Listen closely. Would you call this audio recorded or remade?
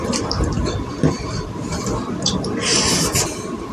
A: remade